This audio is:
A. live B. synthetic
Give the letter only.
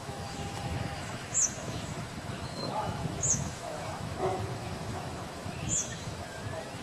B